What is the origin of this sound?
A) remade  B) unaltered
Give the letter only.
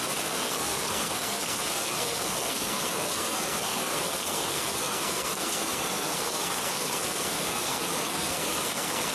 A